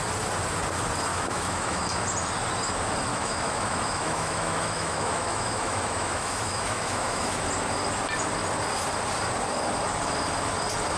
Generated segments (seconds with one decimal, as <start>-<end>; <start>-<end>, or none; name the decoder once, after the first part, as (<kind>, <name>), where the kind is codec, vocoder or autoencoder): 1.1-2.0 (autoencoder, DAC-VAE); 3.1-7.4